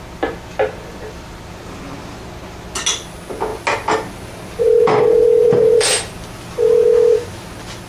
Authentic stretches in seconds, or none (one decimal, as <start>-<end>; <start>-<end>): 0.0-7.9